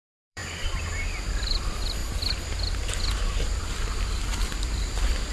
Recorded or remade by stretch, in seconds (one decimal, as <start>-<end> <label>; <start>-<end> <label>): 0.0-0.4 remade; 0.4-1.6 recorded; 1.6-2.0 remade; 2.0-3.6 recorded; 3.6-5.3 remade